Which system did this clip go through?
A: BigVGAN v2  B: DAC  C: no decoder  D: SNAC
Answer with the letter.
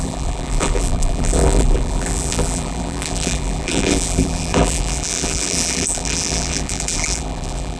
A